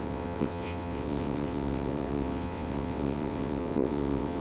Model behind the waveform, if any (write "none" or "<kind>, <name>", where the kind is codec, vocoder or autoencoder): vocoder, WaveNeXt